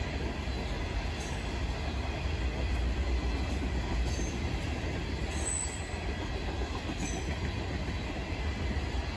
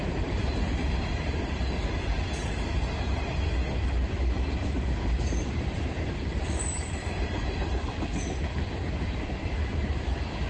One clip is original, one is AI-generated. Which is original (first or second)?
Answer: first